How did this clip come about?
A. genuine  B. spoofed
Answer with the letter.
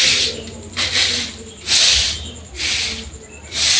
A